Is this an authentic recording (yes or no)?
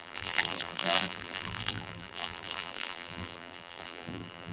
no